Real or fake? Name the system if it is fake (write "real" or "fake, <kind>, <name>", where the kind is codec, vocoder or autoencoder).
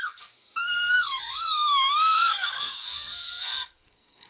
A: fake, codec, SNAC